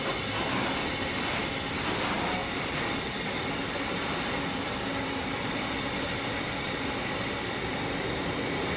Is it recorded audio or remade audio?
recorded